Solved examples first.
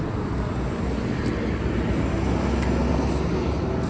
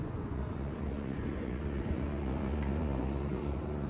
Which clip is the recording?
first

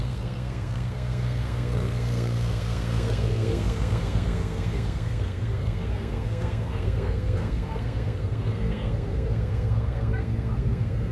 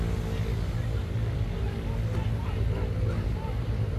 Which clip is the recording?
second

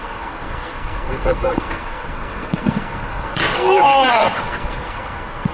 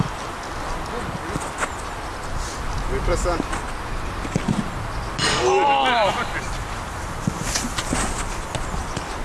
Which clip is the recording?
second